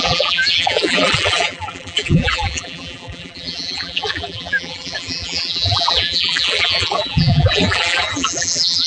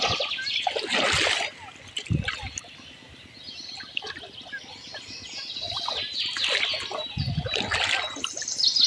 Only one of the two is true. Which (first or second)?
second